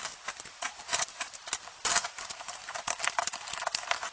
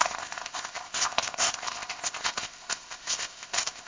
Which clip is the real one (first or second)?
first